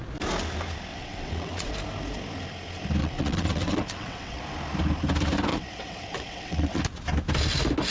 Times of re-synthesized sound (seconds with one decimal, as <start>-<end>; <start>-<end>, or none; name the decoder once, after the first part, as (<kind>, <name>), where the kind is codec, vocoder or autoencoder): 0.9-1.7 (vocoder, WaveNeXt); 3.0-4.4; 5.5-6.8